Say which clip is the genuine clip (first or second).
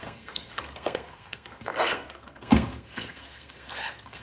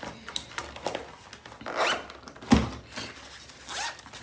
second